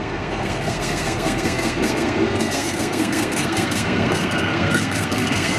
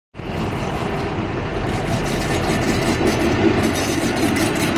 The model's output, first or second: first